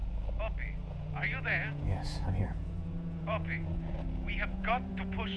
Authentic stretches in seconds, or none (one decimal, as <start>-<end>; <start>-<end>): 0.0-0.9